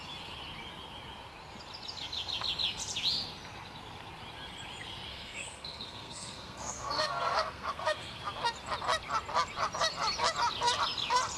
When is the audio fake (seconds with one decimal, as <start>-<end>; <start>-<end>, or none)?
5.1-8.2